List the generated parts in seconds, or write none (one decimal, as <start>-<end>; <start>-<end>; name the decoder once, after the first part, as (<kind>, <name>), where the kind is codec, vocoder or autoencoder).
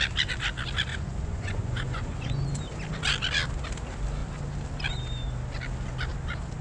0.9-2.4 (vocoder, Vocos)